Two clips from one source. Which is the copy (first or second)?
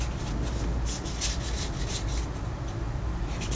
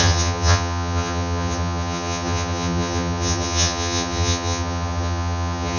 second